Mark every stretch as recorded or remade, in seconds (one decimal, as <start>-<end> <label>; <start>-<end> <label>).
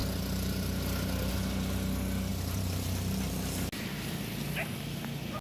0.0-5.4 recorded